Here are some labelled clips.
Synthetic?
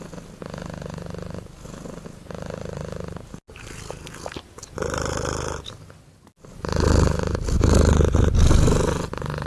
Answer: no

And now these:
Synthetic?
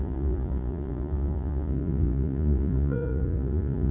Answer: yes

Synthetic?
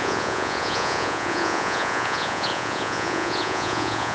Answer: yes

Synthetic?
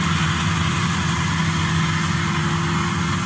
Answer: no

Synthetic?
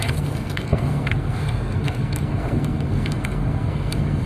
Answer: yes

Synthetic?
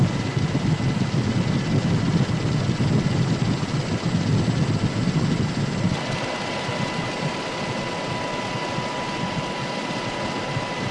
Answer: no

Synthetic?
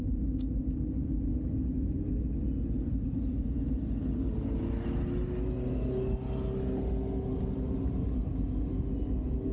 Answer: no